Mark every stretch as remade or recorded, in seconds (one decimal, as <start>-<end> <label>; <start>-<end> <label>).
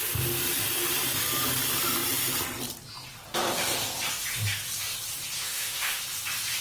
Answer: 0.0-5.4 recorded; 5.4-6.0 remade; 6.0-6.6 recorded